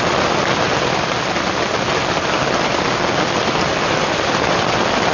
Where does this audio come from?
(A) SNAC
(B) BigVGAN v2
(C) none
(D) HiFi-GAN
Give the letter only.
C